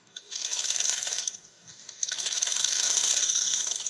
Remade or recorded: remade